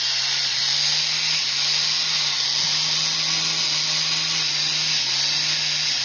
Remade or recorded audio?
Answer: recorded